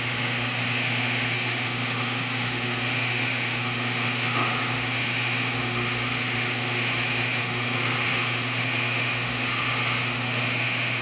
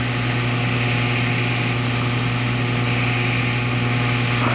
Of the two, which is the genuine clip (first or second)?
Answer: second